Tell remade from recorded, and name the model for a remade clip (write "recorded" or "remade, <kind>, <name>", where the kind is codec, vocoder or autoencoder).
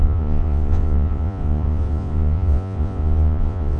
remade, vocoder, Vocos